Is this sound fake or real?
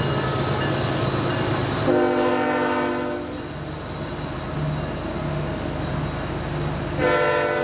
real